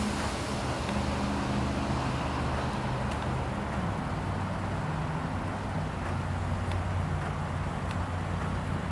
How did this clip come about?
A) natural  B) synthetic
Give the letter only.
A